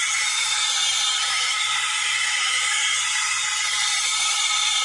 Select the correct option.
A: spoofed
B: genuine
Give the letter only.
B